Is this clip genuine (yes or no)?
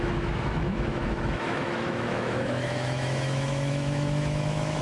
no